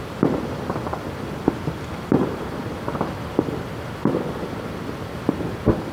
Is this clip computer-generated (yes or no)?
no